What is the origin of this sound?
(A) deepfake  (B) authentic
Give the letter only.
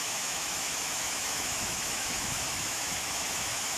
A